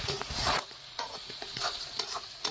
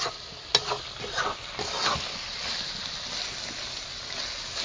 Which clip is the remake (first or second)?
first